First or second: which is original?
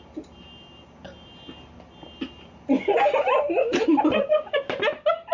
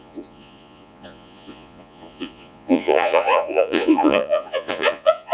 first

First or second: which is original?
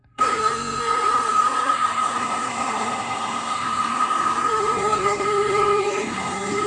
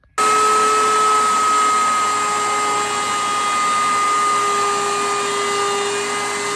second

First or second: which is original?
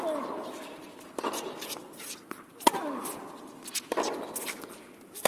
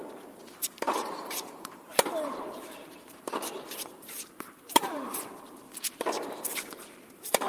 first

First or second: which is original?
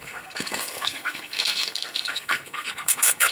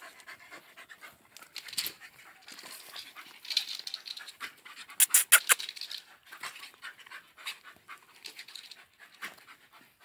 second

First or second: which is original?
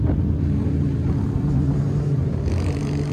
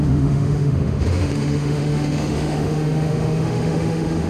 first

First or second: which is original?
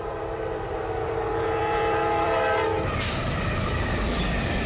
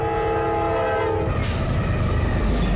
second